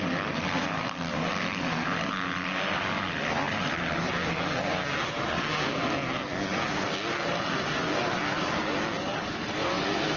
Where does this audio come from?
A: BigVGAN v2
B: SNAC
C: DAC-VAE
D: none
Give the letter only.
D